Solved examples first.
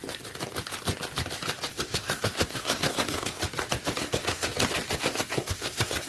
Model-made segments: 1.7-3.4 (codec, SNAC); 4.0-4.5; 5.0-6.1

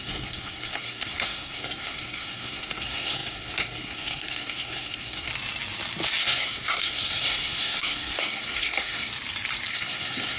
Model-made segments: 0.0-5.3 (codec, SNAC); 6.2-9.1; 9.7-10.4

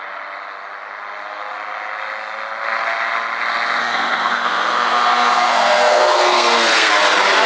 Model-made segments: 3.8-6.9 (codec, SNAC)

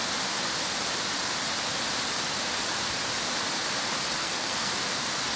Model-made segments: 4.2-4.7 (codec, SNAC)

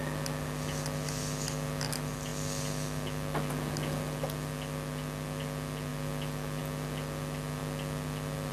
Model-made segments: none

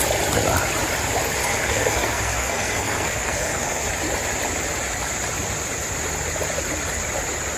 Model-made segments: 1.4-3.9 (codec, SNAC)

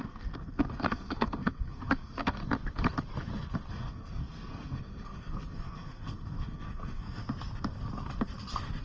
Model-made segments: 0.0-2.4 (codec, SNAC); 3.7-7.2

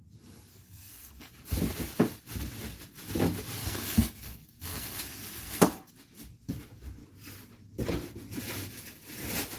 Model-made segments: 0.5-1.3 (codec, SNAC); 3.6-5.9